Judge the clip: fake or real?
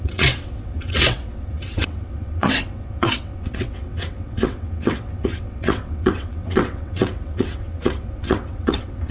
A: fake